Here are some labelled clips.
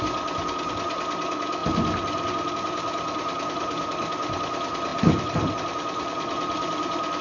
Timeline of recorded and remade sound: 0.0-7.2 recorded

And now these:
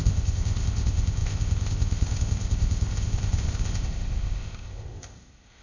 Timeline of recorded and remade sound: 0.0-5.6 remade

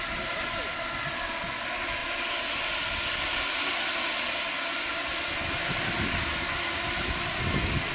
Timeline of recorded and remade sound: 0.0-7.9 recorded

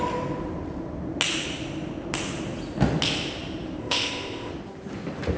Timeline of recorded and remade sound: 0.0-3.8 recorded; 3.8-4.5 remade; 4.5-5.4 recorded

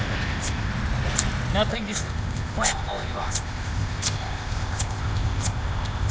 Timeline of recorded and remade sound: 0.0-0.7 remade; 0.7-1.7 recorded; 1.7-6.1 remade